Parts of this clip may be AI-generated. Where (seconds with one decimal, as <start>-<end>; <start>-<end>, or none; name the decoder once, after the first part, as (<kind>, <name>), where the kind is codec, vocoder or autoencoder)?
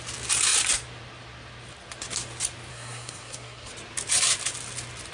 2.7-3.7 (codec, SNAC)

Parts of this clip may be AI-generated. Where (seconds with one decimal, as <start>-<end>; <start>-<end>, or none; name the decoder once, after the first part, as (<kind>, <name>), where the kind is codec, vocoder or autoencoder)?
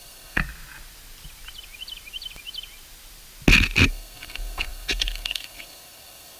0.0-0.4 (codec, SNAC); 3.9-6.4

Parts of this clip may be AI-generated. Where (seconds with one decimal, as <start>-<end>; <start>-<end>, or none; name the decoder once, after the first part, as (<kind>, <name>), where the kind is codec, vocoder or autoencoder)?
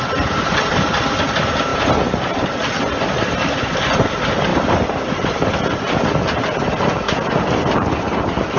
none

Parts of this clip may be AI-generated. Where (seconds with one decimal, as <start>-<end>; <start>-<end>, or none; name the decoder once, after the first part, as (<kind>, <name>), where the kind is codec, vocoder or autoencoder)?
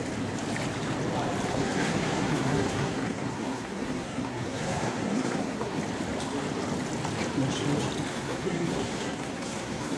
1.5-5.8 (codec, SNAC); 8.1-10.0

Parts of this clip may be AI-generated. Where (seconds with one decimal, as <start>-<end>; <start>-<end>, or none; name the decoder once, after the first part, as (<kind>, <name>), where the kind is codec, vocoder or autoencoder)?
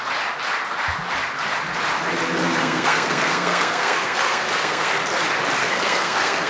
2.4-4.9 (codec, SNAC); 5.6-6.5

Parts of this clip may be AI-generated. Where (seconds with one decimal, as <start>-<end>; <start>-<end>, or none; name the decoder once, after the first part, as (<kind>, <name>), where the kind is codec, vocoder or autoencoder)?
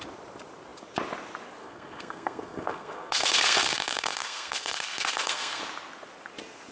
1.6-5.6 (codec, SNAC)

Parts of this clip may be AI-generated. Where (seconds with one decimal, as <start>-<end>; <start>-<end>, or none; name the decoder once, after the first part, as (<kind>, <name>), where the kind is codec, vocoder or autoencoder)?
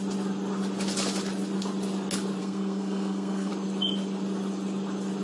2.4-3.5 (codec, SNAC)